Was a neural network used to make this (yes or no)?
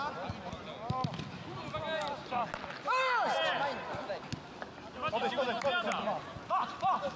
no